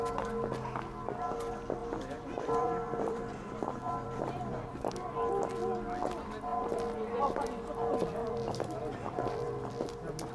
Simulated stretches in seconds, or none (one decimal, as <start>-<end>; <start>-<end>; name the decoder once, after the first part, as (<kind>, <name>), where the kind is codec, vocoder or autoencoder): 1.8-5.3 (vocoder, BigVGAN v2); 6.5-7.2; 8.2-9.8